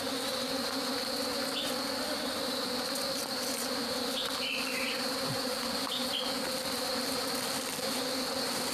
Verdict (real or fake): fake